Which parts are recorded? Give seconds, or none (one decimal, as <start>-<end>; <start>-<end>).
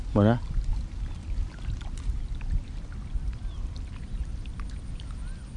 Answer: 0.0-5.6